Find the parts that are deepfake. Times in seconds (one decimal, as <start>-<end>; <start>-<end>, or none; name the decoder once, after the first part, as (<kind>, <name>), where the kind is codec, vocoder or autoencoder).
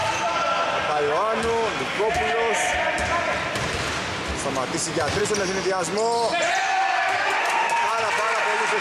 6.6-7.9 (codec, SNAC)